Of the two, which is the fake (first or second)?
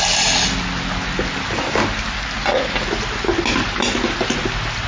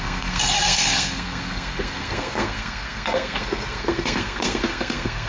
second